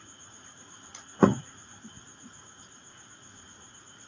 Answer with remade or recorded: remade